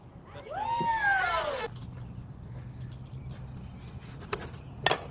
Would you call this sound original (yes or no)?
yes